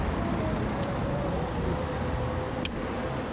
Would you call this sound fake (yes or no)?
no